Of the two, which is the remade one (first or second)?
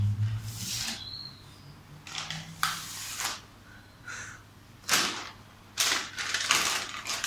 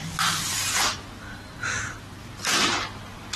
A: second